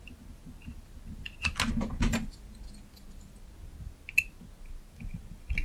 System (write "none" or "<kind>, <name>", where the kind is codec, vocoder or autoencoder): none